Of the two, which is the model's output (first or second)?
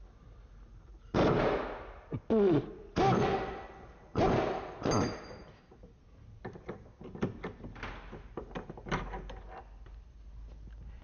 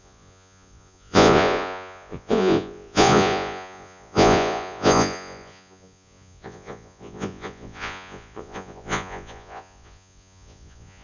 second